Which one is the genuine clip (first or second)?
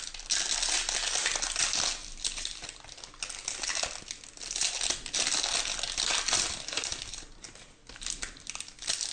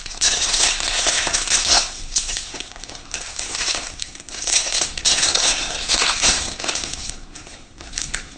first